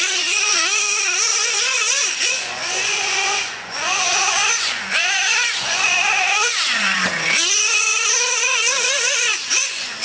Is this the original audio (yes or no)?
no